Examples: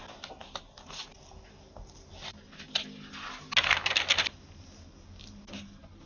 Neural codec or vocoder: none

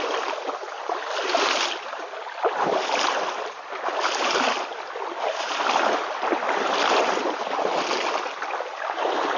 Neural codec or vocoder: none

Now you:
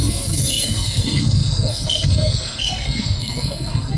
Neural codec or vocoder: codec, SNAC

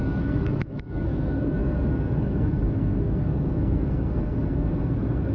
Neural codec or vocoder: codec, SNAC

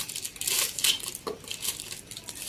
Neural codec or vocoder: none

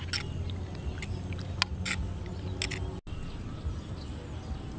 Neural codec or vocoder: none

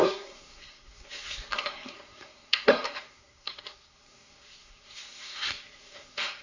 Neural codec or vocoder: codec, SNAC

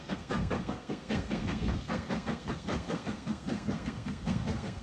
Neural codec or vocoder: codec, SNAC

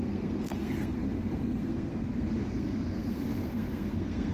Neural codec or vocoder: codec, SNAC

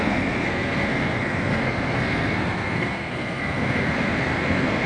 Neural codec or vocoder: codec, SNAC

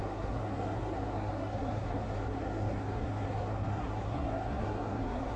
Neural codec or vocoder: codec, SNAC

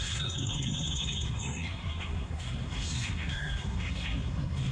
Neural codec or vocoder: codec, SNAC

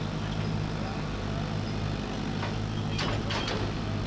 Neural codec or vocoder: none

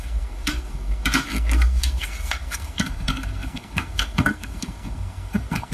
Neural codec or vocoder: codec, SNAC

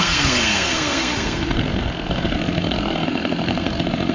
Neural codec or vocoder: codec, SNAC